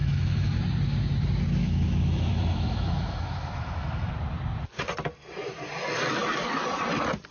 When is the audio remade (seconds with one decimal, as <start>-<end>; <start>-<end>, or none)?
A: 0.0-0.6; 1.6-4.1